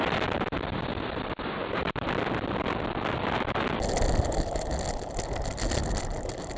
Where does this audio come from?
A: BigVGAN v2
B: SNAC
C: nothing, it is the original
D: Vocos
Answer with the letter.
C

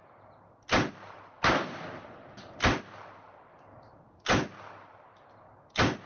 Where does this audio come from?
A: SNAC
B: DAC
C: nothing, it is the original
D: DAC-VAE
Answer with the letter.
C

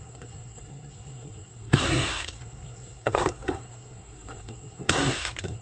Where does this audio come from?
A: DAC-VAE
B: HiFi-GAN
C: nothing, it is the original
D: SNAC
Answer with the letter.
D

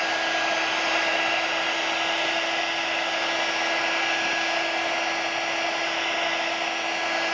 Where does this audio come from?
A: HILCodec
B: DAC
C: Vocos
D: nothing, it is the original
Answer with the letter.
D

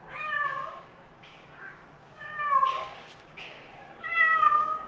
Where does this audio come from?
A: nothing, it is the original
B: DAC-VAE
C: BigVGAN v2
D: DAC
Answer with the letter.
D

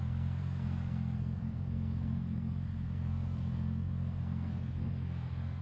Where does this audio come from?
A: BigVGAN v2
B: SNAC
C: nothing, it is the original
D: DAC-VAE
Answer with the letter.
B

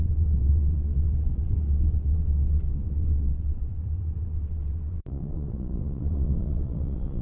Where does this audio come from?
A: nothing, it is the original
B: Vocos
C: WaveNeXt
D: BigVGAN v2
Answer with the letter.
C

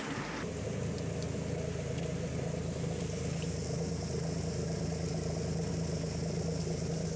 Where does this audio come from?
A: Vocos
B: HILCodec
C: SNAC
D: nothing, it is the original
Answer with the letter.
D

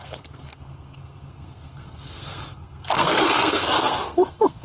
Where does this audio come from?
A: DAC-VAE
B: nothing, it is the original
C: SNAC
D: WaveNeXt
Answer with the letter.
C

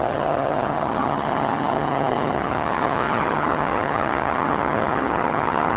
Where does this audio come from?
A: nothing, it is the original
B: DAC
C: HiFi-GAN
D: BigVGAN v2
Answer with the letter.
C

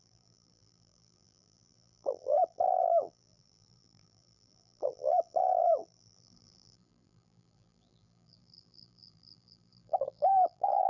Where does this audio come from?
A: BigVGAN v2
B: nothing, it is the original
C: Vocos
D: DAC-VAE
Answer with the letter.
A